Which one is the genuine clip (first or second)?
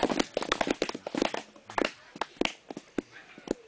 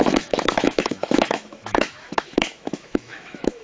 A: first